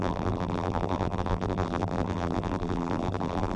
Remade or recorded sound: remade